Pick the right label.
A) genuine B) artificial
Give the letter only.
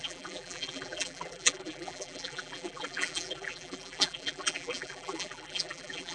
B